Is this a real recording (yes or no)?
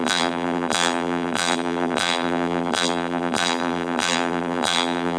no